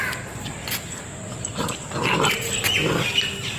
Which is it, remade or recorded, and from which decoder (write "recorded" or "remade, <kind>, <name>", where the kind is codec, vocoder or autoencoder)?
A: recorded